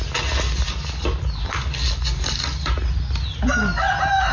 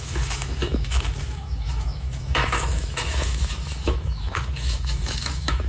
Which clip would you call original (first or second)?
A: first